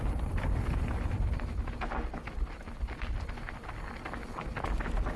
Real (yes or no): yes